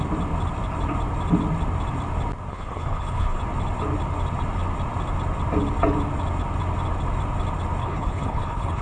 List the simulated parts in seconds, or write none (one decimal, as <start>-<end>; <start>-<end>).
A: 2.5-3.4; 7.8-8.8